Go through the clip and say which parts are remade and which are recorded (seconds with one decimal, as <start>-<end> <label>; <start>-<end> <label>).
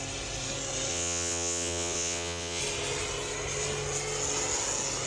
0.0-0.9 recorded; 0.9-2.6 remade; 2.6-5.1 recorded